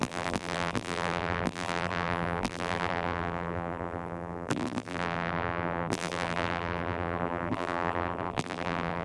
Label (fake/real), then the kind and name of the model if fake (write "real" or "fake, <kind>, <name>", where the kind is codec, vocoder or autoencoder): fake, vocoder, BigVGAN v2